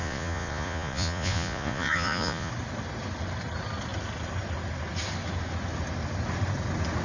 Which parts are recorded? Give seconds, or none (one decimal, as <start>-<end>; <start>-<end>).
2.5-7.0